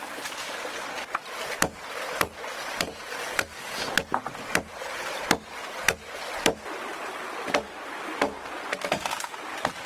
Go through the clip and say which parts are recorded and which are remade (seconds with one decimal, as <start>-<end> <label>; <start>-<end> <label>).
0.0-2.6 recorded; 2.6-3.9 remade; 3.9-4.7 recorded; 4.7-5.2 remade; 5.2-6.9 recorded; 6.9-7.6 remade; 7.6-9.9 recorded